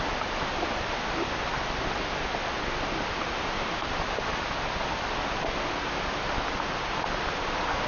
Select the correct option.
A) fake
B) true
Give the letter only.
B